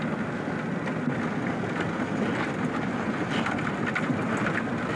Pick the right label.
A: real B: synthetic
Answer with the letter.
A